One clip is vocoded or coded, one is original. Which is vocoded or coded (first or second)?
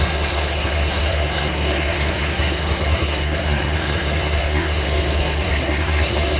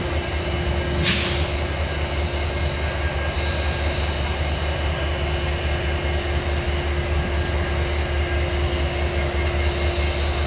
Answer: first